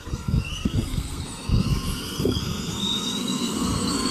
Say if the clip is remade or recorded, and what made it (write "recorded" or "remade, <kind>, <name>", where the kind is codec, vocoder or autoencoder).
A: remade, codec, SNAC